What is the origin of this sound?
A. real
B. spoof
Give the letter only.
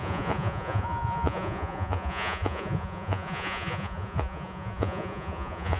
B